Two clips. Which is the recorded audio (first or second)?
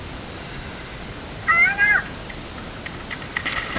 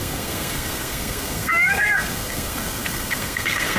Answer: first